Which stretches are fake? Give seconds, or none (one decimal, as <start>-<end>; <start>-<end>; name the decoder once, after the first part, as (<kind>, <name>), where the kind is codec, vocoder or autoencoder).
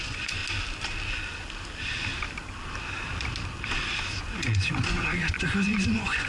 0.0-0.4 (vocoder, Vocos); 4.2-6.3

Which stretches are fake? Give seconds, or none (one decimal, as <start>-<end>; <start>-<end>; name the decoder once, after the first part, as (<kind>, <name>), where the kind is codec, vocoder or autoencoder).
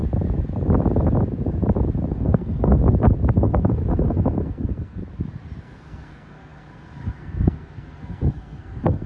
2.1-2.8 (codec, SNAC); 3.4-5.0; 5.6-9.1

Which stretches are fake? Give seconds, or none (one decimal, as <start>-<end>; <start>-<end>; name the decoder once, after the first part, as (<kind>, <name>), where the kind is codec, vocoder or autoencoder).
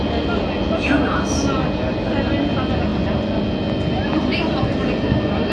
none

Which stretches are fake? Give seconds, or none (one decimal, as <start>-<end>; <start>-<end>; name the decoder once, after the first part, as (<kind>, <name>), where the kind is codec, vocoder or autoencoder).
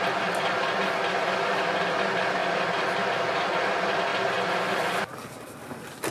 none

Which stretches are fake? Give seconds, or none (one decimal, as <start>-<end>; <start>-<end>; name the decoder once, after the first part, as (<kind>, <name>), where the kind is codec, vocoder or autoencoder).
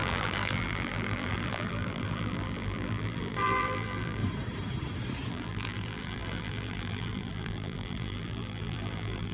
0.0-4.2 (vocoder, BigVGAN v2); 5.3-9.3